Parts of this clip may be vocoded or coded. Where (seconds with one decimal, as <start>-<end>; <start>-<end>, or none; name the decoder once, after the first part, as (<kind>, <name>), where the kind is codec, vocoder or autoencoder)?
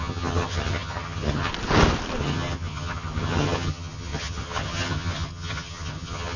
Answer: 0.0-1.5 (vocoder, HiFi-GAN); 2.2-6.4